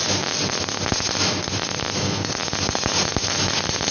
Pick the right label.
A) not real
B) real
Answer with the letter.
B